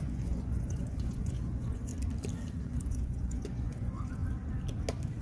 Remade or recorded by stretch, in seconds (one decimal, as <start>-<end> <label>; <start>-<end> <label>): 0.0-1.9 remade; 1.9-2.6 recorded; 2.6-4.2 remade; 4.2-5.2 recorded